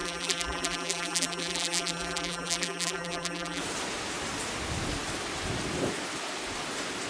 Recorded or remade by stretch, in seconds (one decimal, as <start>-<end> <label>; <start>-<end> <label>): 0.0-3.6 remade; 3.6-7.1 recorded